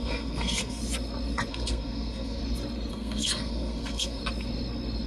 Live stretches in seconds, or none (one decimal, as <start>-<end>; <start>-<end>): 0.8-1.5; 2.4-2.9; 4.2-5.1